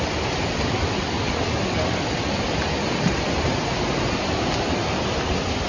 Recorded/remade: recorded